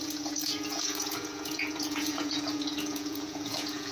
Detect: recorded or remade remade